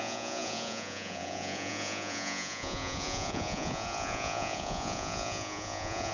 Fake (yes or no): yes